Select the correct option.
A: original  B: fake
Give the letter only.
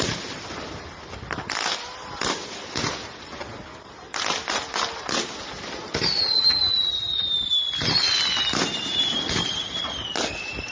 A